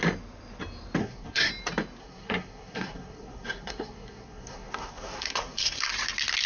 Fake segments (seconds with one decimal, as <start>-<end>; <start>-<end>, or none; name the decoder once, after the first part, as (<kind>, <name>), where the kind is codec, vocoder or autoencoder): 1.0-1.5 (codec, SNAC); 2.0-5.9